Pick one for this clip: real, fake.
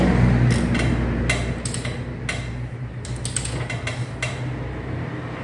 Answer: real